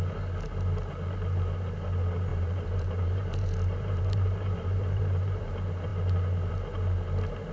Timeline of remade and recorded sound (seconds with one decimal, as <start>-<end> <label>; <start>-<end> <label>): 0.0-2.3 recorded; 2.3-5.5 remade; 5.5-7.5 recorded